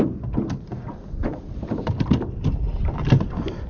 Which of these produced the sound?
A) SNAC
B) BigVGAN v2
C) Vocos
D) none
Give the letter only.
D